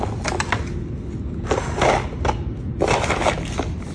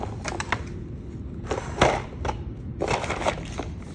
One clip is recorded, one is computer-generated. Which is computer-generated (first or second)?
second